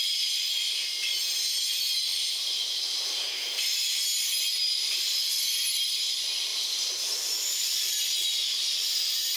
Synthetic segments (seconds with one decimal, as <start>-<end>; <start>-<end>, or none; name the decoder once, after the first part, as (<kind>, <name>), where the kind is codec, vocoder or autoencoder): 2.1-2.8 (vocoder, BigVGAN v2); 6.5-7.9